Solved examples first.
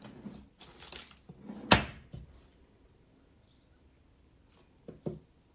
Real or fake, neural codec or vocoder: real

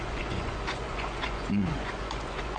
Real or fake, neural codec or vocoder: fake, vocoder, Vocos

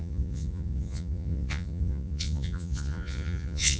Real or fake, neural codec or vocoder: fake, vocoder, Vocos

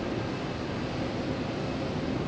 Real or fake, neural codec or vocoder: real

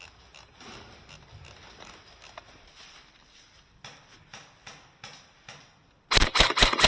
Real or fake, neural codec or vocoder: real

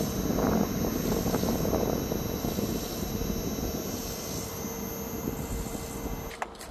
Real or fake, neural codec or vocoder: real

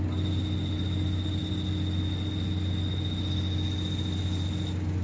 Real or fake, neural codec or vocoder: real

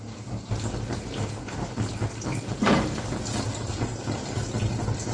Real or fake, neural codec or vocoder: real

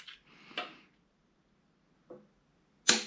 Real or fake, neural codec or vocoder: real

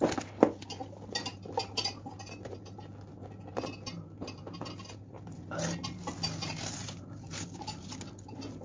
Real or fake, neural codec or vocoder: real